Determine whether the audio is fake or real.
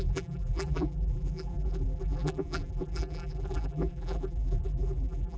fake